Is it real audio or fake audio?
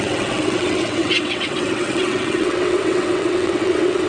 fake